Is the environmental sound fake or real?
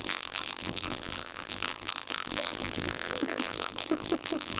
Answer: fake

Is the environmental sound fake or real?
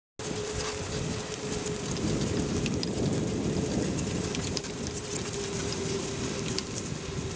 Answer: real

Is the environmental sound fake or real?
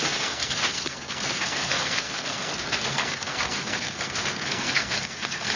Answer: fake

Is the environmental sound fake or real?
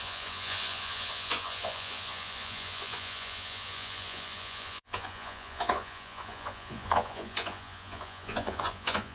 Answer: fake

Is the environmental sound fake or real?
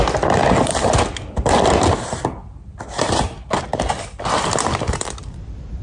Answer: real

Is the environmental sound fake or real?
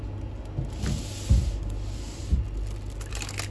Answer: real